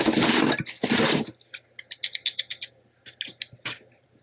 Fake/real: real